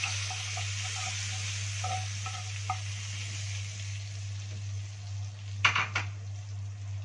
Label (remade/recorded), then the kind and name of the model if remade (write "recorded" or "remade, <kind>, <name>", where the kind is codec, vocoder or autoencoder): recorded